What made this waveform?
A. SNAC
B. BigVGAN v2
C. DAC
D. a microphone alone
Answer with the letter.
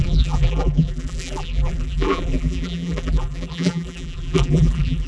B